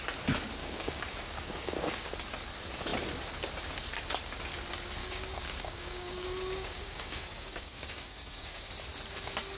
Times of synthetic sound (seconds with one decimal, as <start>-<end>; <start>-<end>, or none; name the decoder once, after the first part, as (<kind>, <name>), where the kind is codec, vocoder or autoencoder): 0.6-2.1 (codec, DAC); 5.0-8.7